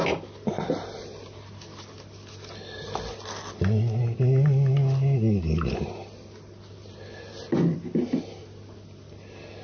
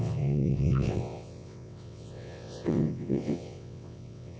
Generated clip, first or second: second